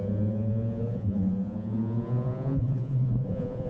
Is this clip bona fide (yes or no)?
no